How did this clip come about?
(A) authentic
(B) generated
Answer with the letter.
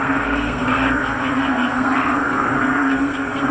B